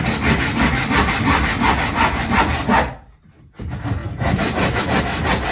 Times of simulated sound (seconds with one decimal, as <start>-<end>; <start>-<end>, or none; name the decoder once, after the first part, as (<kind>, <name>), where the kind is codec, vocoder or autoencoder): none